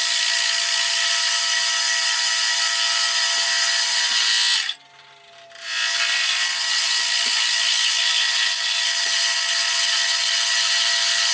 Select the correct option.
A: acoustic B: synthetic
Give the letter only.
A